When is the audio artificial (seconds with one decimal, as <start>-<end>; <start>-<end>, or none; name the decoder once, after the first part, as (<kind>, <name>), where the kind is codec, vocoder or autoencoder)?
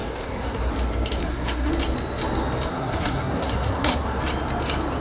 0.0-0.7 (codec, SNAC); 1.2-1.7; 2.7-4.2